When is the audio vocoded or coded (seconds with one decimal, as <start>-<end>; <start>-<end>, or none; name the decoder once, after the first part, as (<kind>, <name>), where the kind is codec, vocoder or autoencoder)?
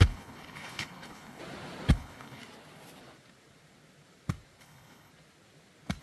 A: 0.0-1.4 (codec, HILCodec); 1.9-2.4; 4.6-5.1